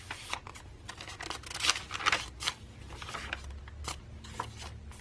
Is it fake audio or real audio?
real